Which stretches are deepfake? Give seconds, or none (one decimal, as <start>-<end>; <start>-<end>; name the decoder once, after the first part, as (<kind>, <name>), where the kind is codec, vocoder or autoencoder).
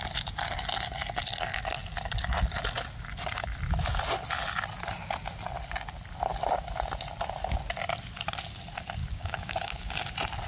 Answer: 9.0-9.9 (codec, DAC)